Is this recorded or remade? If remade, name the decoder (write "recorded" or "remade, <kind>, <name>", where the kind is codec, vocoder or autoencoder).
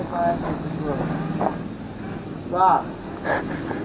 recorded